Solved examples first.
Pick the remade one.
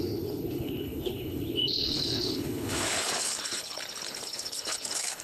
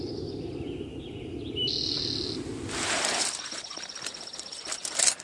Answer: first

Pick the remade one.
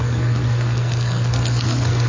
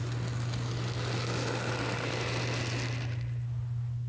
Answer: first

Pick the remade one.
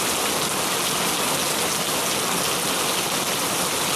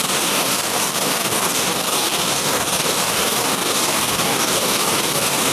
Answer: second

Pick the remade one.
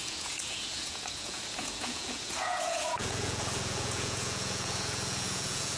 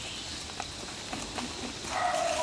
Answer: first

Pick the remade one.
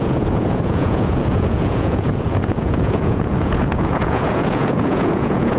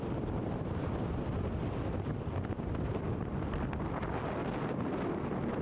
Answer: first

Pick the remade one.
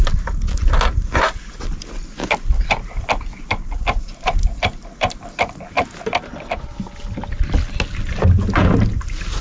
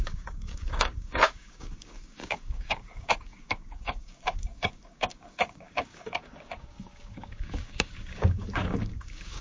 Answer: second